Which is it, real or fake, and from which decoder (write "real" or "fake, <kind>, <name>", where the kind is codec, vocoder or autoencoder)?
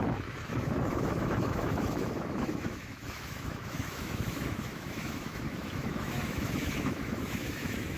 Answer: fake, autoencoder, DAC-VAE